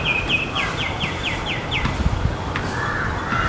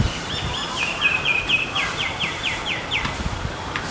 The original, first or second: first